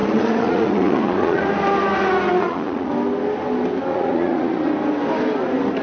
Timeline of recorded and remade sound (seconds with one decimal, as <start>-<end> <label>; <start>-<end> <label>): 0.0-1.4 remade; 1.4-2.3 recorded; 2.3-2.9 remade; 2.9-3.9 recorded; 3.9-4.7 remade; 4.7-5.8 recorded